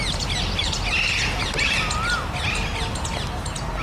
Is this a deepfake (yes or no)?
no